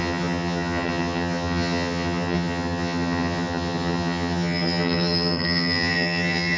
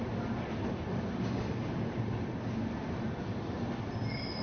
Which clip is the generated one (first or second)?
first